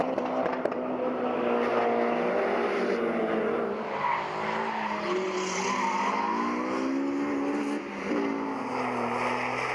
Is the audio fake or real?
real